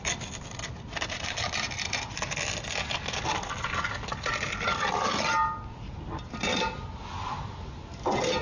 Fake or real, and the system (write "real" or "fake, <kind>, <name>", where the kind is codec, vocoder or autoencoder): real